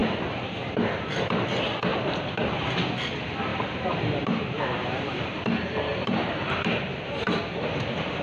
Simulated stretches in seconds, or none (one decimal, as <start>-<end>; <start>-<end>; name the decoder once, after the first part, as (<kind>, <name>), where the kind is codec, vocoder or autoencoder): 0.0-0.9 (vocoder, BigVGAN v2); 1.9-2.5; 3.5-5.2; 5.9-7.2